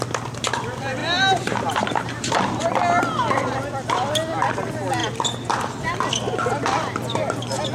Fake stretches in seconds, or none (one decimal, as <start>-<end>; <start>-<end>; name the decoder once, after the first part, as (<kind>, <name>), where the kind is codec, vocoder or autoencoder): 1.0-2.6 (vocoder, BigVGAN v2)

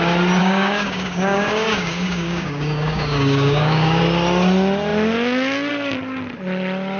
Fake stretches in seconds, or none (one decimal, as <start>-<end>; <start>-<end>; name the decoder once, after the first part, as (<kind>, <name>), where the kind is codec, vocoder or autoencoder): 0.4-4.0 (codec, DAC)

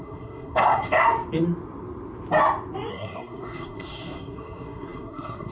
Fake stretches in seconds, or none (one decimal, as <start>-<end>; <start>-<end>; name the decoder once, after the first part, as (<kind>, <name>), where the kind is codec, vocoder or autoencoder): 0.0-1.0 (codec, SNAC); 2.9-5.5